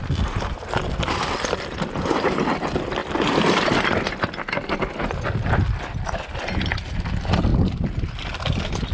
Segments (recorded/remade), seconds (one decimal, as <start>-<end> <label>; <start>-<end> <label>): 0.0-3.0 recorded; 3.0-4.8 remade; 4.8-8.9 recorded